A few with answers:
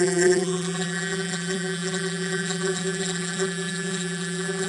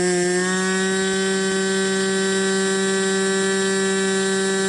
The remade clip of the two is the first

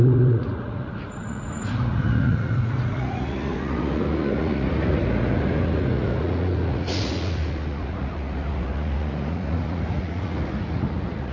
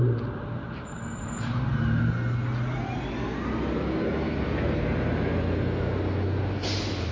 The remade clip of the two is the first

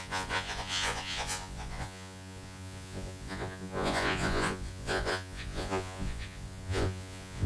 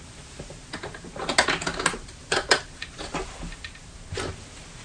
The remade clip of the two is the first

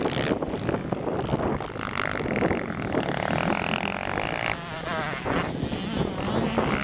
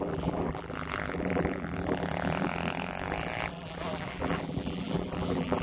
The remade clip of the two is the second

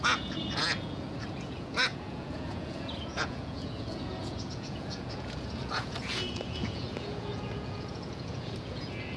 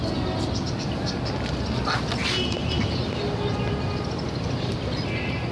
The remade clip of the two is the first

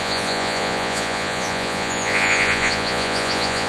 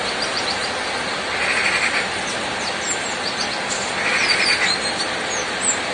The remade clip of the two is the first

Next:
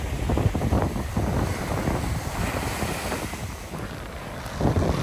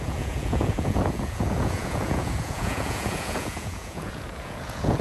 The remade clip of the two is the second